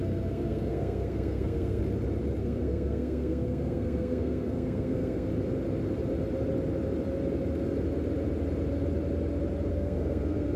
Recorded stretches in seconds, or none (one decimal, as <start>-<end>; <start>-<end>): 1.8-2.4; 5.3-9.7